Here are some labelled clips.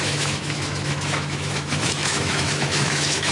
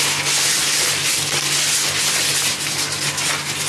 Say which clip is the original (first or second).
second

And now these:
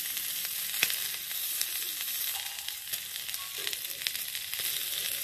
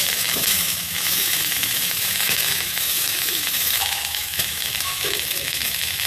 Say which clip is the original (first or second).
first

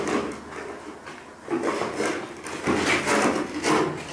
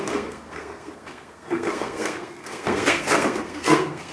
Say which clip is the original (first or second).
first